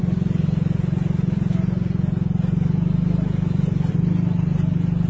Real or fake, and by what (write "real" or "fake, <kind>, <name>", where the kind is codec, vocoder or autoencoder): real